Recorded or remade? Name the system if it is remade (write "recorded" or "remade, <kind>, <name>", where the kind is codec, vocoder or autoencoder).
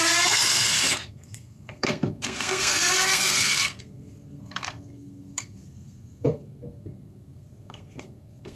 remade, codec, SNAC